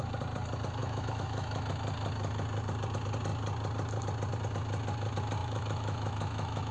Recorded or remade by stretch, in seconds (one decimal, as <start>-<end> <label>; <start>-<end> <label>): 0.0-0.8 recorded; 0.8-1.7 remade; 1.7-5.4 recorded; 5.4-6.7 remade